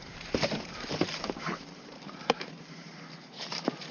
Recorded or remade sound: remade